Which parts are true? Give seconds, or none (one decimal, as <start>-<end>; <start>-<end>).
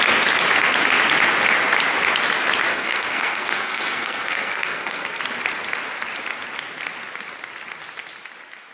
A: 0.0-2.7; 5.2-8.7